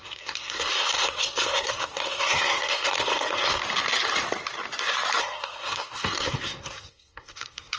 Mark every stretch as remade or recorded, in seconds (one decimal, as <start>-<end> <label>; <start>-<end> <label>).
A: 0.0-3.6 remade; 3.6-5.2 recorded; 5.2-7.8 remade